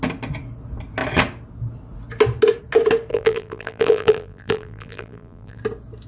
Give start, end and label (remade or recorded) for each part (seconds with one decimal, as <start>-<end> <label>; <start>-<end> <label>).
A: 0.0-3.1 recorded; 3.1-5.6 remade; 5.6-6.1 recorded

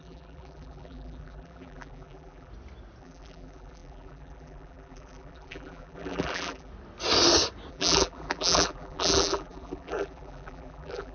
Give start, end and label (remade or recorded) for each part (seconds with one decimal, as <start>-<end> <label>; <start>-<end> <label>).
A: 0.0-2.5 remade; 2.5-3.0 recorded; 3.0-6.7 remade; 6.7-7.7 recorded; 7.7-11.1 remade

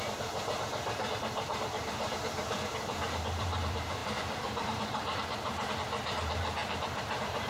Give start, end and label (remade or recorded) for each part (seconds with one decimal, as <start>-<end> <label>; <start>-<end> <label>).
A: 0.0-0.6 remade; 0.6-1.2 recorded; 1.2-7.5 remade

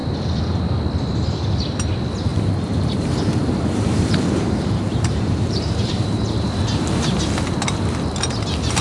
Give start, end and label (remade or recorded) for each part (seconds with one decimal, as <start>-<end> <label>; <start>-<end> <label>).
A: 0.0-0.6 remade; 0.6-2.3 recorded; 2.3-6.5 remade; 6.5-8.8 recorded

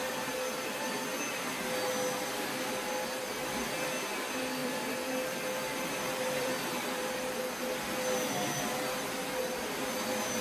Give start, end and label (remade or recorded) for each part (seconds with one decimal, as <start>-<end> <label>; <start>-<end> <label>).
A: 0.0-4.6 recorded; 4.6-7.1 remade; 7.1-10.4 recorded

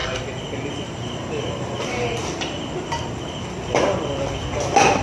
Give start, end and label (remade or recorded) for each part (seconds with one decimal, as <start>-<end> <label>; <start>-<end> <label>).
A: 0.0-5.0 recorded

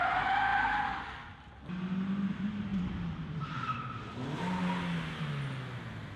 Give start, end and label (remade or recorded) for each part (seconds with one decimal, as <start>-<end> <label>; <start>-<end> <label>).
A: 0.0-2.7 recorded; 2.7-4.4 remade; 4.4-6.2 recorded